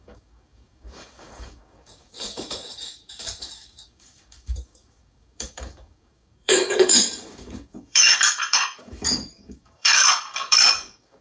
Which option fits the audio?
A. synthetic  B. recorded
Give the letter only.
A